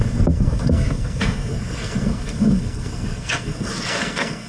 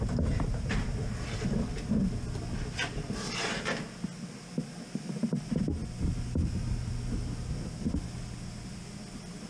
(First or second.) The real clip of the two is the second